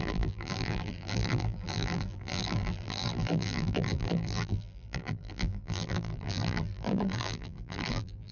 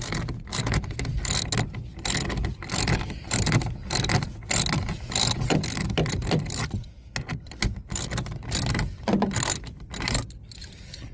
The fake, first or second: first